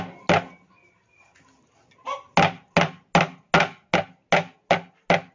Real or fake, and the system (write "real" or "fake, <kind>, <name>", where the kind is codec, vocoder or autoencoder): real